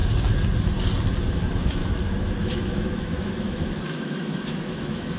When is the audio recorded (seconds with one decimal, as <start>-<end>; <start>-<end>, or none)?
0.0-1.3; 1.8-2.4